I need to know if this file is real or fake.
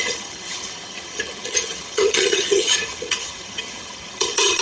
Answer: fake